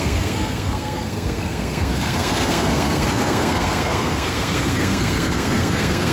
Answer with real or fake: fake